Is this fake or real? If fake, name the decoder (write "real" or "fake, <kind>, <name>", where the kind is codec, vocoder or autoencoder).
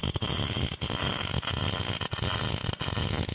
real